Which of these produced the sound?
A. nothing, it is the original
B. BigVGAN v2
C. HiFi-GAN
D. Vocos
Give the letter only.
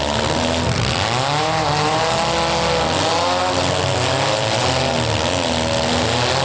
A